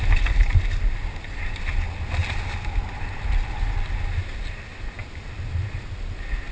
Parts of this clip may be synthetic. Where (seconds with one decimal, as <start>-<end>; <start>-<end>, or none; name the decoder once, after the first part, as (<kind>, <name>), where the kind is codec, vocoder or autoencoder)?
none